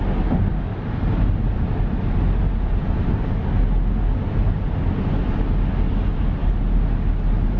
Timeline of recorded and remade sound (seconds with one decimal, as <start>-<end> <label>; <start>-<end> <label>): 0.0-7.6 recorded